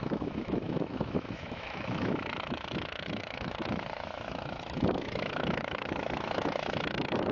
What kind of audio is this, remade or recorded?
remade